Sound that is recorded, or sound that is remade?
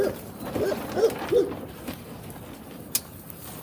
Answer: recorded